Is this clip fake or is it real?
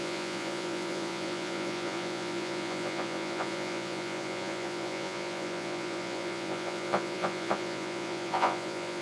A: fake